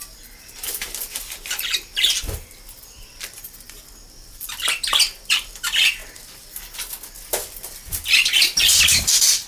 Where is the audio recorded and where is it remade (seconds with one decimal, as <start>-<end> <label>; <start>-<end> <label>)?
0.0-1.9 remade; 1.9-2.8 recorded; 2.8-6.0 remade; 6.0-7.7 recorded; 7.7-9.5 remade